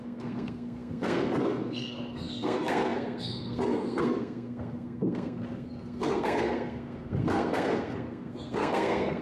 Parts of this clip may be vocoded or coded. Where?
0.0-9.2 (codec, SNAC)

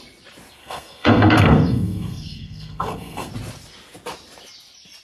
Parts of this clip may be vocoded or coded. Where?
0.6-3.3 (codec, SNAC)

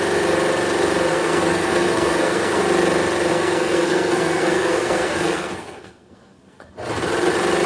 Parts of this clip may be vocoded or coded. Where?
1.1-2.6 (codec, SNAC); 3.3-6.7